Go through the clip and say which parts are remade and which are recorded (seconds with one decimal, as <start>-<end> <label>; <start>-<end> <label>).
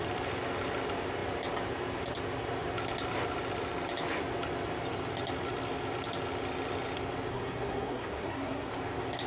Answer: 0.0-7.3 recorded; 7.3-8.7 remade; 8.7-9.3 recorded